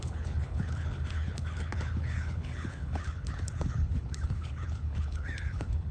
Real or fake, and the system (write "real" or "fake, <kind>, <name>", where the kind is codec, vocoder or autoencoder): fake, codec, HILCodec